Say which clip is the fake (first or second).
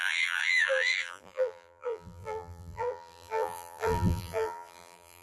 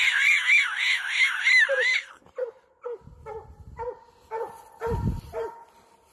first